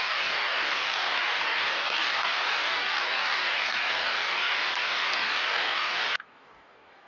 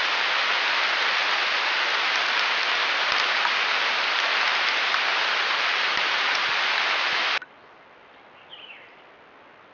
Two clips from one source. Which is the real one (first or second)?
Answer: second